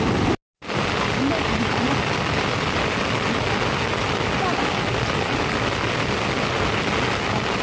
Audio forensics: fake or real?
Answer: real